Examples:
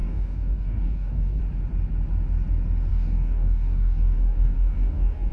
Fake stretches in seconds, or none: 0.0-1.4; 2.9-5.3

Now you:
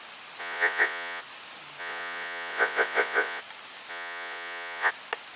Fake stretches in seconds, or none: 0.4-1.2; 1.8-3.4; 3.9-4.9